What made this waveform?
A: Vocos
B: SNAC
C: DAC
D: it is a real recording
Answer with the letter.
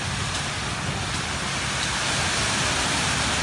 D